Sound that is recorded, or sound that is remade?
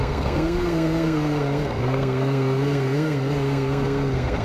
remade